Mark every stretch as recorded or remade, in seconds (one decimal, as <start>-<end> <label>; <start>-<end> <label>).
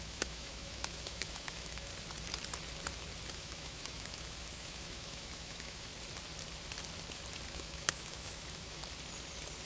0.0-1.9 remade; 1.9-3.3 recorded; 3.3-5.9 remade; 5.9-7.5 recorded; 7.5-8.8 remade; 8.8-9.7 recorded